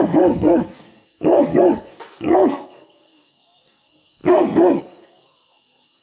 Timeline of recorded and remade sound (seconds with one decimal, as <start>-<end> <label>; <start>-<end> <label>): 0.0-6.0 remade